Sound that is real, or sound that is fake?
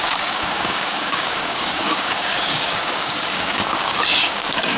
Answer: fake